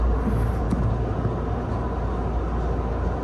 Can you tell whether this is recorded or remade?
recorded